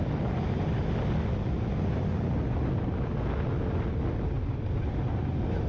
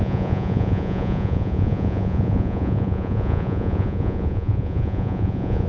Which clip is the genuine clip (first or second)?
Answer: first